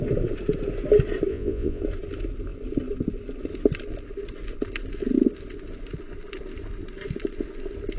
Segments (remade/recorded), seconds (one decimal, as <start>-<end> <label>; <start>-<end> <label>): 0.0-1.3 recorded; 1.3-1.8 remade; 1.8-8.0 recorded